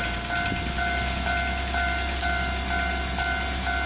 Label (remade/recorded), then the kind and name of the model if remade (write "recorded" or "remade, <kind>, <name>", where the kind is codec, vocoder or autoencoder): recorded